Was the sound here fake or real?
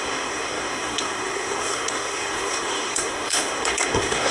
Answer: fake